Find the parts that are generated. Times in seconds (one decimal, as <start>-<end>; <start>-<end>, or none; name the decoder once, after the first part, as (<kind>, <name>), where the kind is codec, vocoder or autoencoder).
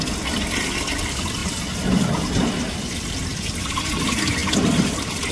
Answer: 4.4-5.3 (vocoder, BigVGAN v2)